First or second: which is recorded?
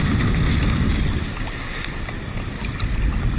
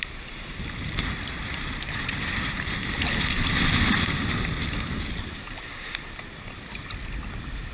first